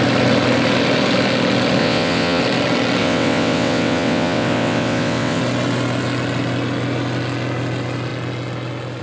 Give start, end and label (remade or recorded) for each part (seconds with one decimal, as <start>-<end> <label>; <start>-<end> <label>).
0.0-1.8 recorded; 1.8-2.4 remade; 2.4-3.0 recorded; 3.0-5.4 remade; 5.4-9.0 recorded